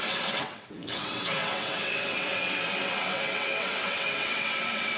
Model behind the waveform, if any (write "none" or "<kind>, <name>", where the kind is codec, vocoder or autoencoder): vocoder, WaveNeXt